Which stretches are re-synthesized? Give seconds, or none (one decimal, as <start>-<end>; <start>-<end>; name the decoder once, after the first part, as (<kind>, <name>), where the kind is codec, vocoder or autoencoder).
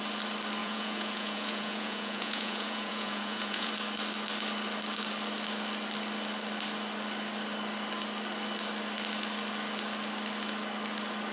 0.6-3.7 (vocoder, Vocos)